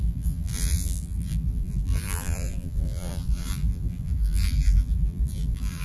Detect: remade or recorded remade